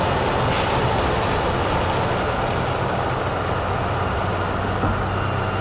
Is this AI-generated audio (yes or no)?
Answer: no